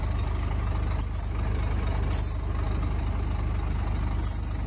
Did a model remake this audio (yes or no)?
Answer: no